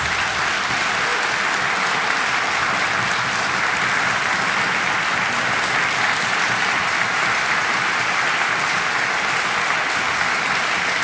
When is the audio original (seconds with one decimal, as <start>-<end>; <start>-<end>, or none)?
0.0-6.8; 8.0-11.0